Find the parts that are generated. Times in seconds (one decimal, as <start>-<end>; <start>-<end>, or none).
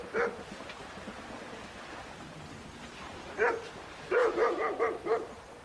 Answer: none